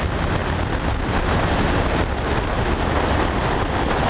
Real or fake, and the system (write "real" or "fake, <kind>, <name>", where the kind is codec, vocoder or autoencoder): real